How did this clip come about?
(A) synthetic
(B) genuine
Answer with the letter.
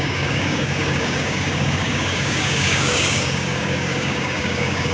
A